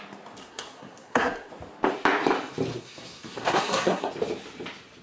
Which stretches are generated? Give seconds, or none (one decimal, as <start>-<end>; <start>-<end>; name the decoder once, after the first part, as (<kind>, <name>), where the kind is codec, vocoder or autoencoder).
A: 0.4-1.5 (codec, SNAC); 2.7-4.1